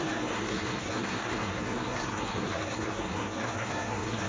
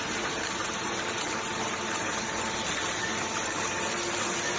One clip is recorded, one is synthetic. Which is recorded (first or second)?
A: second